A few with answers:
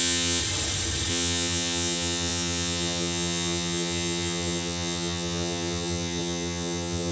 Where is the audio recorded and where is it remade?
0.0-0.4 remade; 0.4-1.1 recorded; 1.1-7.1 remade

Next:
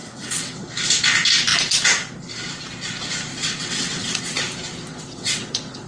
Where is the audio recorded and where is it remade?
0.0-0.6 remade; 0.6-3.3 recorded; 3.3-4.4 remade; 4.4-4.9 recorded; 4.9-5.9 remade

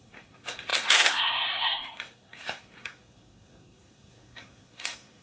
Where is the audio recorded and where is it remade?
0.0-5.2 remade

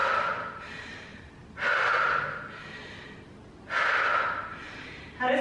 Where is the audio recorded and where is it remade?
0.0-0.6 recorded; 0.6-1.1 remade; 1.1-4.3 recorded; 4.3-5.4 remade

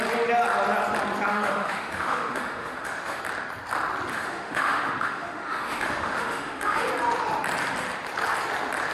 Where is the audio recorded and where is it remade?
0.0-1.3 recorded; 1.3-3.2 remade; 3.2-4.1 recorded; 4.1-6.9 remade; 6.9-8.9 recorded

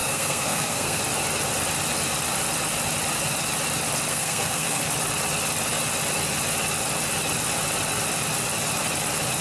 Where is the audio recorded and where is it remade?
0.0-1.0 remade; 1.0-4.1 recorded; 4.1-4.8 remade; 4.8-9.4 recorded

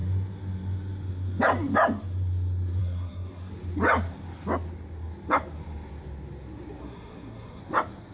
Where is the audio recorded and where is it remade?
0.0-2.8 recorded; 2.8-3.5 remade; 3.5-6.8 recorded; 6.8-7.6 remade; 7.6-8.1 recorded

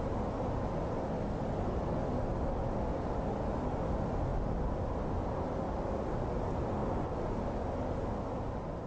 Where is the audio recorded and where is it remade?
0.0-8.9 recorded